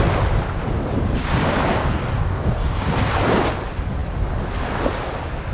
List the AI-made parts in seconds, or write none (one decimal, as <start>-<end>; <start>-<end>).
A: 1.8-3.1